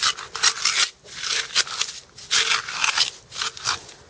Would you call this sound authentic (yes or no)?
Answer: yes